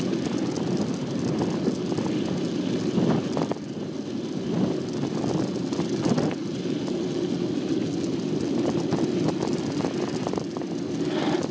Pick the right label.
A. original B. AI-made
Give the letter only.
A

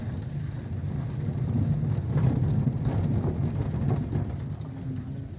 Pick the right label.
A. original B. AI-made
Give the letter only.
A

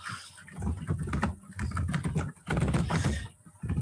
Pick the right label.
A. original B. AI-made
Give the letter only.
A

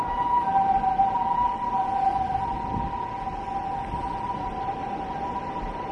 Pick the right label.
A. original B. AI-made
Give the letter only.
A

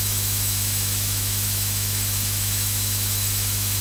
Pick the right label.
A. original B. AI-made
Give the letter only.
B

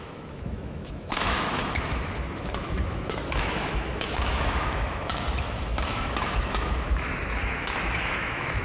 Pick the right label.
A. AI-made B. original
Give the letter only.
A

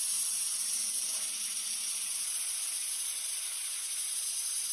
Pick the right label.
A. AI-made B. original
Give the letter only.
B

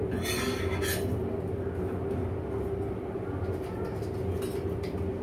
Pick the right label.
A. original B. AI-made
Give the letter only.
A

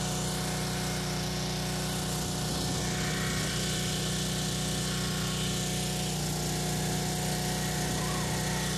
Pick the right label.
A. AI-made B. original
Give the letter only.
B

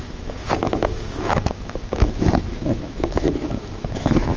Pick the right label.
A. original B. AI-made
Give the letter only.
B